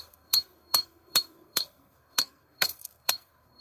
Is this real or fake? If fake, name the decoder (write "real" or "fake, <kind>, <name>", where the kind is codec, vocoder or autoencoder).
fake, codec, SNAC